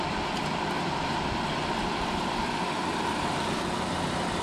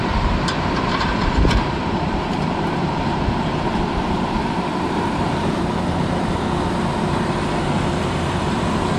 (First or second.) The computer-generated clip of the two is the second